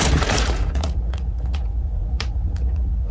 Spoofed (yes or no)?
yes